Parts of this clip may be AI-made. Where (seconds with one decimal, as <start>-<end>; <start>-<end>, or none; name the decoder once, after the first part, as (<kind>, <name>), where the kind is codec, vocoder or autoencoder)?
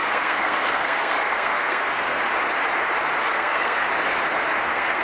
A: 0.0-2.2 (codec, SNAC); 3.3-3.9; 4.6-5.0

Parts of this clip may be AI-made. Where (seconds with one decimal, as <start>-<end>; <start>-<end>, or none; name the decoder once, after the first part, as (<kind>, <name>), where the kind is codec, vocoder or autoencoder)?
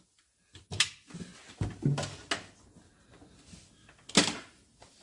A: none